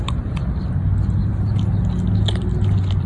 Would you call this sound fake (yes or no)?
no